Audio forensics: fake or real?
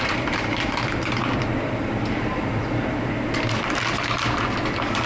fake